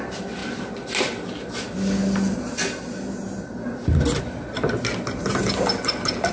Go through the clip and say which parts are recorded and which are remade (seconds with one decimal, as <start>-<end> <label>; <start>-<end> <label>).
0.0-6.3 recorded